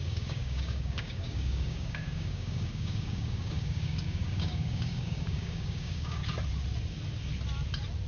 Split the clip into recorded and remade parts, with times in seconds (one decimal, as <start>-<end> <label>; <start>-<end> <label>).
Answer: 0.0-6.2 remade; 6.2-8.1 recorded